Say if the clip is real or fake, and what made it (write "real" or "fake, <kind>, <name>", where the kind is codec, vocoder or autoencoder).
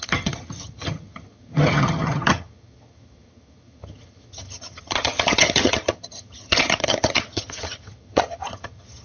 fake, vocoder, HiFi-GAN